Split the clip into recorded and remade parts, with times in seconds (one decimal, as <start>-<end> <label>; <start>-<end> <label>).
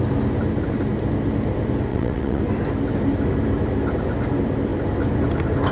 0.0-1.9 recorded; 1.9-2.4 remade; 2.4-5.7 recorded